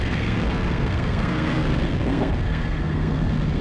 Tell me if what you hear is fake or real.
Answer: fake